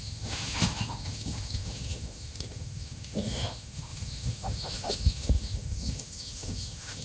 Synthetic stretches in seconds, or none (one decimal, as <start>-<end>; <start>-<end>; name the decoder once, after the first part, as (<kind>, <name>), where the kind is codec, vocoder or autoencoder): 0.0-7.0 (autoencoder, DAC-VAE)